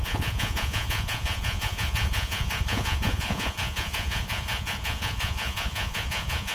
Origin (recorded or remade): remade